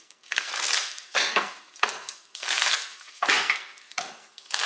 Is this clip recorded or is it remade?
remade